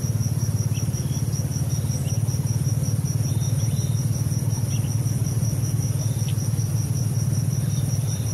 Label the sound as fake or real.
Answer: real